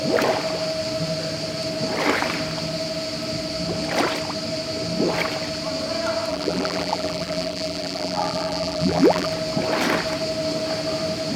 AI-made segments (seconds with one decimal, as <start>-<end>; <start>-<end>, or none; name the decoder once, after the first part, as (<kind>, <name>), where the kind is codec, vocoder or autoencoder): 6.3-9.3 (vocoder, BigVGAN v2)